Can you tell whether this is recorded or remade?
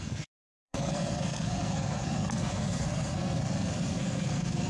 remade